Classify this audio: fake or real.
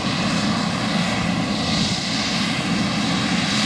real